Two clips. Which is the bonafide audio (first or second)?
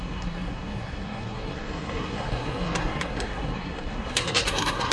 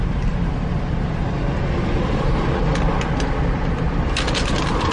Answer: second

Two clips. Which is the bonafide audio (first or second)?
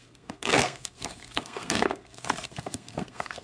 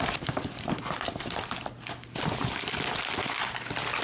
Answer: second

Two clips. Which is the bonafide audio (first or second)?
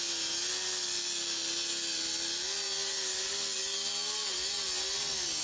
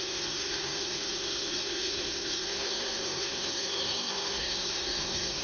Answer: first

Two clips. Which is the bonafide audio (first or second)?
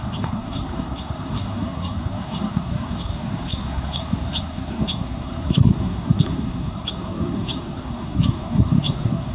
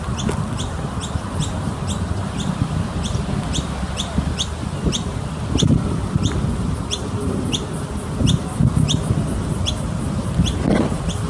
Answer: second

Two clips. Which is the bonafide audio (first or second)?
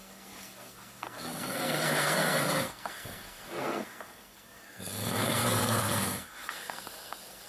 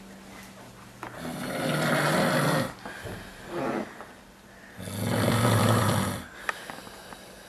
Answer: second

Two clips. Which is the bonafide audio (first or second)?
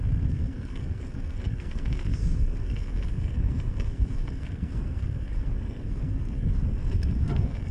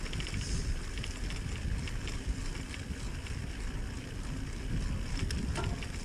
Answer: second